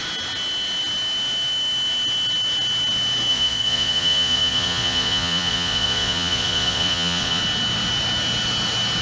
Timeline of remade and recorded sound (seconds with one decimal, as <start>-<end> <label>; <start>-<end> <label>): 0.0-3.3 recorded; 3.3-7.4 remade; 7.4-9.0 recorded